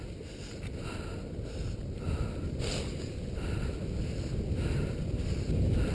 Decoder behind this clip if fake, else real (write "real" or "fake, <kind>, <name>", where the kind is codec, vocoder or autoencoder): real